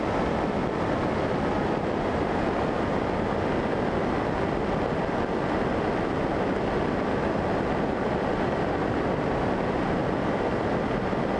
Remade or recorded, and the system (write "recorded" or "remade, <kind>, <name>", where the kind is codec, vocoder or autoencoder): recorded